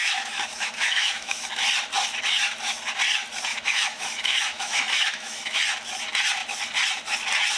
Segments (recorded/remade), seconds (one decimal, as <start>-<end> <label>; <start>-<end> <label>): 0.0-1.5 remade; 1.5-3.5 recorded; 3.5-5.6 remade; 5.6-7.6 recorded